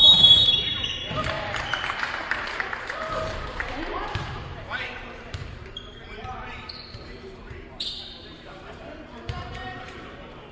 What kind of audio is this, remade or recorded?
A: remade